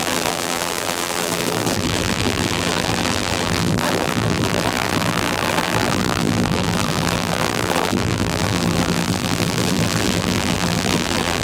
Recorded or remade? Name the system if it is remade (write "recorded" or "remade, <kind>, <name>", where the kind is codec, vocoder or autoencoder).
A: remade, vocoder, BigVGAN v2